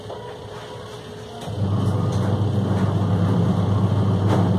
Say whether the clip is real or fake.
real